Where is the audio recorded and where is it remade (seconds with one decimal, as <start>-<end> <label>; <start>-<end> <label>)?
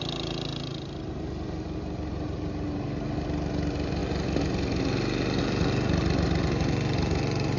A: 0.0-7.6 recorded